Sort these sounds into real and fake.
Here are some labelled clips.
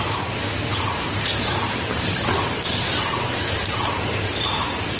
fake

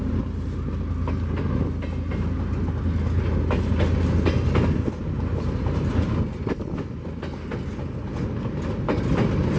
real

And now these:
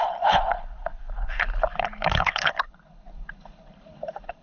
fake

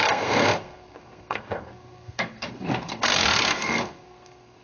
fake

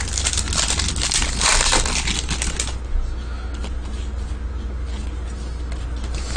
real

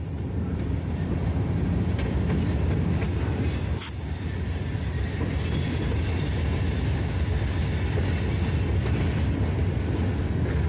real